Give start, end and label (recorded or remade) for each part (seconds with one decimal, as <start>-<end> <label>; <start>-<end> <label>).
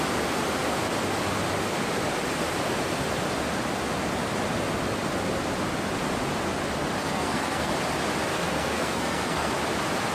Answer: 0.0-7.0 recorded; 7.0-7.7 remade; 7.7-8.3 recorded; 8.3-9.5 remade; 9.5-10.1 recorded